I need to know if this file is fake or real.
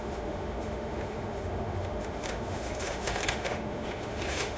fake